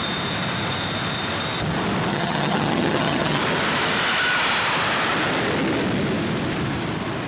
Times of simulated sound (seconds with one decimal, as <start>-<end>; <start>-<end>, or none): 2.1-3.4